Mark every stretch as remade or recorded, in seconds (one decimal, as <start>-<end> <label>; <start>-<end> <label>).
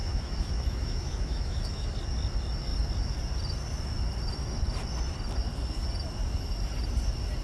0.0-1.9 remade; 1.9-7.4 recorded